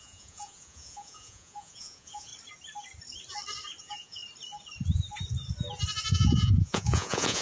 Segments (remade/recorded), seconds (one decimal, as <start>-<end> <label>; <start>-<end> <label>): 0.0-2.3 remade; 2.3-3.8 recorded; 3.8-4.2 remade; 4.2-6.1 recorded; 6.1-7.4 remade

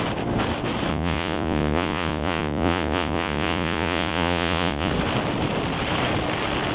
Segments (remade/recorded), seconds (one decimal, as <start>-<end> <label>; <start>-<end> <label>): 0.0-0.9 recorded; 0.9-4.9 remade; 4.9-6.7 recorded

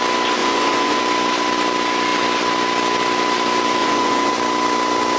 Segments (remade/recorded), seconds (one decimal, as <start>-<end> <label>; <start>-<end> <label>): 0.0-0.4 recorded; 0.4-1.0 remade; 1.0-3.8 recorded; 3.8-4.3 remade; 4.3-5.2 recorded